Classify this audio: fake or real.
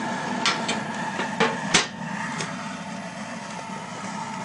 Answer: real